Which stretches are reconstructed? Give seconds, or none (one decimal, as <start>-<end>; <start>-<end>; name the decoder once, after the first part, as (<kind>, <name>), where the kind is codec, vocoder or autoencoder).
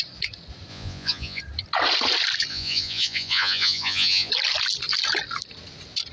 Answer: 0.7-1.4 (vocoder, Vocos); 2.5-4.3